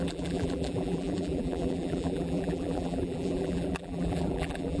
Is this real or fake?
fake